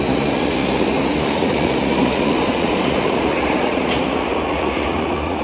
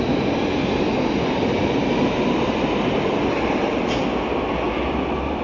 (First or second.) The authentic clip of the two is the second